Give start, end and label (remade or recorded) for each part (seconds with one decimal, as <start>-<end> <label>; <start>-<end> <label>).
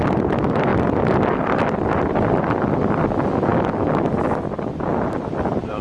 0.0-5.8 recorded